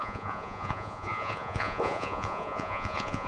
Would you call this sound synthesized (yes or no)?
yes